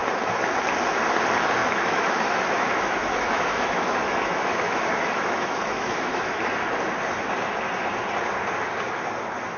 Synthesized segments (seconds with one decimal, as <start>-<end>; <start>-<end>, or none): 1.6-6.4